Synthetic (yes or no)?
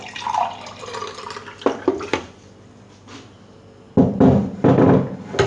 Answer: no